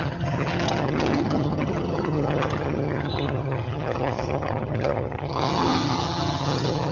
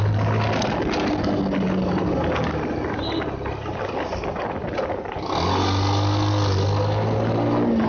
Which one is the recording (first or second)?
second